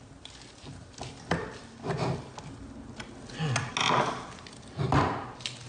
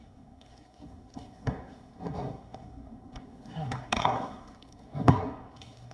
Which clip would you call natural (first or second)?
first